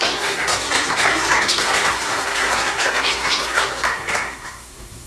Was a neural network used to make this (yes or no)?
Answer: yes